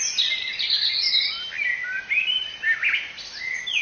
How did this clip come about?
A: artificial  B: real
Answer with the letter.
B